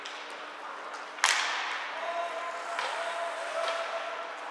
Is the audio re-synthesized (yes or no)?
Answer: no